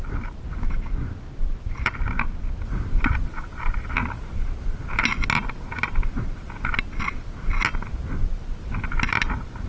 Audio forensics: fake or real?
real